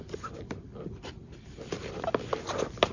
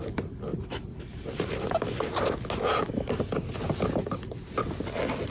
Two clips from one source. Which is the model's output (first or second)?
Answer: first